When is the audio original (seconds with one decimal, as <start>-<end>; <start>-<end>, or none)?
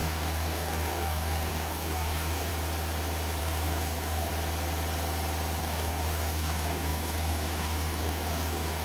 2.5-3.4; 4.3-5.6